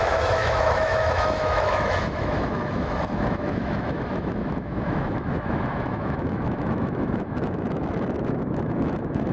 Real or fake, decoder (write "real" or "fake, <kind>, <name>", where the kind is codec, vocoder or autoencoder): fake, autoencoder, DAC-VAE